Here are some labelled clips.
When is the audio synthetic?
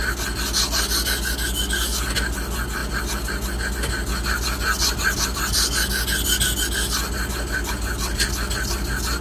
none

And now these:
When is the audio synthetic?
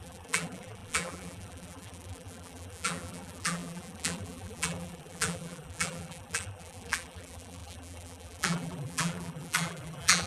0.0-10.3 (vocoder, BigVGAN v2)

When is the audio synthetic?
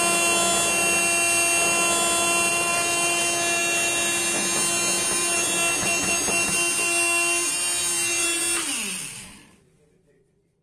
2.5-3.2 (vocoder, BigVGAN v2)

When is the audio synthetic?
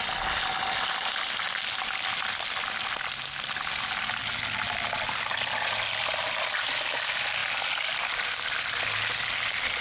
none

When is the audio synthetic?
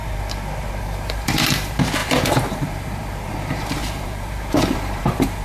0.8-5.4 (vocoder, BigVGAN v2)